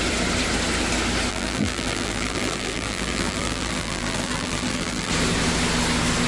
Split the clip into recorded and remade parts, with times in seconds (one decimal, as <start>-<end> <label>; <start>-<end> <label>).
0.0-1.3 recorded; 1.3-5.1 remade; 5.1-6.3 recorded